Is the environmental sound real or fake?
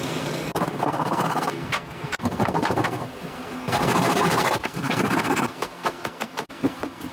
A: fake